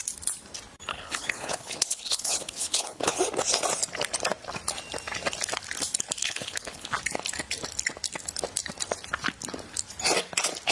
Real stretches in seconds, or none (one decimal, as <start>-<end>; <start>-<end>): 0.0-0.9; 3.2-6.2; 6.9-10.7